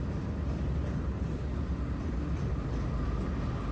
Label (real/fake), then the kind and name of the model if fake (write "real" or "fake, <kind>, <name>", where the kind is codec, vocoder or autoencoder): real